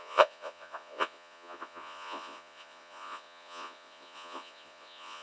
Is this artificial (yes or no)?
yes